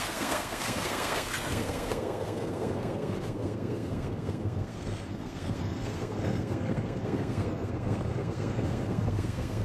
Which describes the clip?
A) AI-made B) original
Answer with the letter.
A